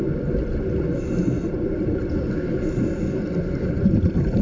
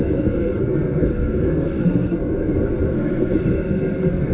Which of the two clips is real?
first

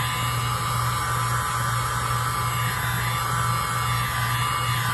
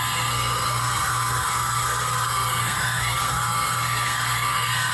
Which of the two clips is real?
first